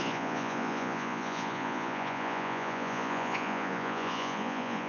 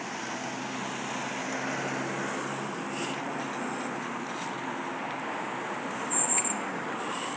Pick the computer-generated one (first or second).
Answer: first